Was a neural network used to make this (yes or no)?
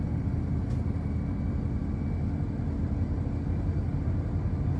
no